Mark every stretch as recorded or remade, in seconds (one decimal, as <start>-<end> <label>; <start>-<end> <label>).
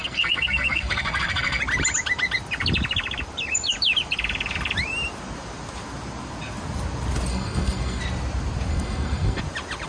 0.0-1.6 remade; 1.6-7.3 recorded; 7.3-8.0 remade; 8.0-8.7 recorded; 8.7-9.4 remade; 9.4-9.9 recorded